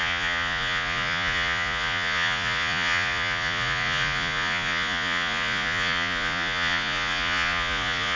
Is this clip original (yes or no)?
no